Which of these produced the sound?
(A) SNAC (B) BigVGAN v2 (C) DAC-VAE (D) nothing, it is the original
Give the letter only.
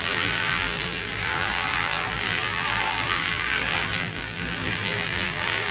B